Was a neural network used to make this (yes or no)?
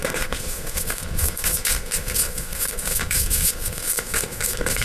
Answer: yes